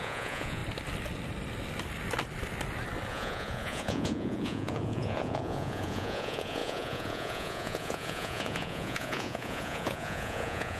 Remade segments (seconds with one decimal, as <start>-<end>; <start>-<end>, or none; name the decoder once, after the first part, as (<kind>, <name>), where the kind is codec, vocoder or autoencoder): 0.0-0.6 (vocoder, Vocos); 3.1-10.8